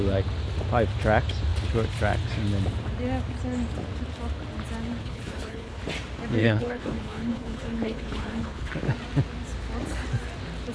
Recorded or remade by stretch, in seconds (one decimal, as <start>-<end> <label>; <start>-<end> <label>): 0.0-5.0 recorded; 5.0-5.8 remade; 5.8-6.4 recorded; 6.4-8.7 remade; 8.7-10.7 recorded